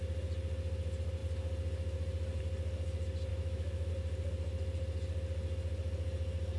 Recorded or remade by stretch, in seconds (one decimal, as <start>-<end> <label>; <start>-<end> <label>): 0.0-3.3 recorded; 3.3-3.9 remade; 3.9-6.6 recorded